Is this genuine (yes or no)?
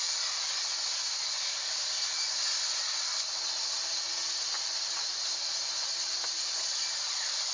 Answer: yes